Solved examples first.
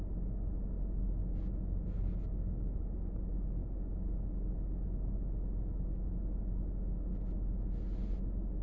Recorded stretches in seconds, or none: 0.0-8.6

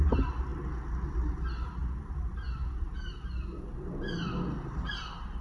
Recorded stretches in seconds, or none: 0.0-5.4

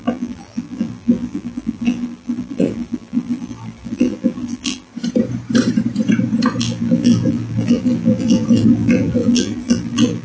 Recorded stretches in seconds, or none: 4.9-6.6